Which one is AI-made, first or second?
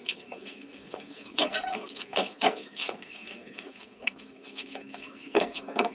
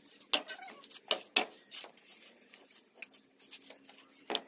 first